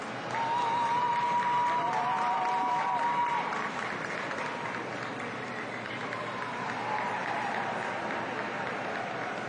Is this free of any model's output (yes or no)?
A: yes